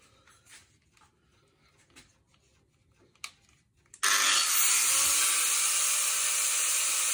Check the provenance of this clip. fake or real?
real